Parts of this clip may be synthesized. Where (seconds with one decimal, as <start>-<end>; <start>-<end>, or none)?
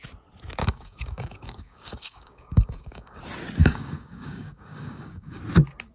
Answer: 0.6-3.2; 3.6-5.4